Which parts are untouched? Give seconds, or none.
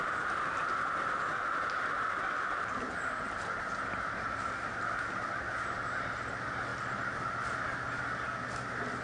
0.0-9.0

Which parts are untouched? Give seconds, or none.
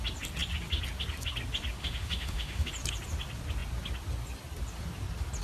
0.0-1.8; 2.7-5.4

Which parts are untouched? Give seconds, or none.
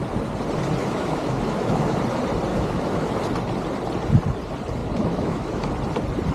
0.0-0.8; 2.0-2.5; 3.1-4.8; 5.7-6.3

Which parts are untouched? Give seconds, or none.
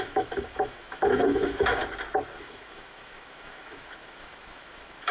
1.8-2.4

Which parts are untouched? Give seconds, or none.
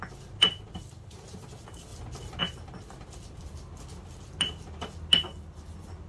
0.0-6.1